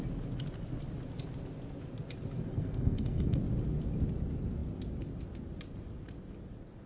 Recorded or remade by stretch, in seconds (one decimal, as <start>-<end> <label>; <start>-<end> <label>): 0.0-2.5 recorded; 2.5-3.4 remade; 3.4-6.9 recorded